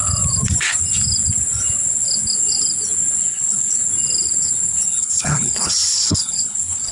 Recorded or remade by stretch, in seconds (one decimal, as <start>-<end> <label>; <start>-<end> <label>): 0.0-3.2 recorded; 3.2-3.9 remade; 3.9-4.7 recorded; 4.7-6.9 remade